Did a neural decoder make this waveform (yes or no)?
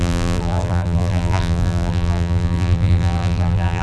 yes